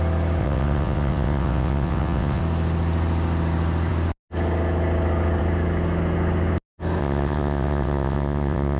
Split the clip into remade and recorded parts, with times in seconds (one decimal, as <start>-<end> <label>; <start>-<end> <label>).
0.0-0.4 recorded; 0.4-2.4 remade; 2.4-7.0 recorded; 7.0-8.8 remade